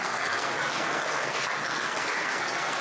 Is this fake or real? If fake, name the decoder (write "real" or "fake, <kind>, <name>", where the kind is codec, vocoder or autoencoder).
fake, codec, SNAC